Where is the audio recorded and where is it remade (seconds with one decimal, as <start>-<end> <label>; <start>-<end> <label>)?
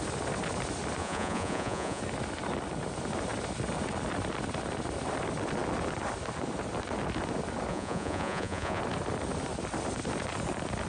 0.0-1.0 recorded; 1.0-2.0 remade; 2.0-7.7 recorded; 7.7-8.8 remade; 8.8-10.9 recorded